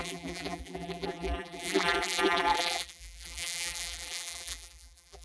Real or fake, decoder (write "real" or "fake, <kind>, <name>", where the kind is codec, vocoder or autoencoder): fake, vocoder, BigVGAN v2